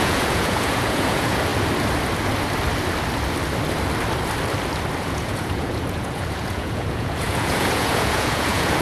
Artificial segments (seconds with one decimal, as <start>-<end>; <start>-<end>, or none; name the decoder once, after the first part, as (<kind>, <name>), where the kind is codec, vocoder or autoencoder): 0.0-1.5 (vocoder, Vocos); 5.0-8.8